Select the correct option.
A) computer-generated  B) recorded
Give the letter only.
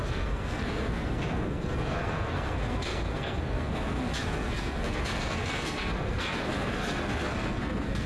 A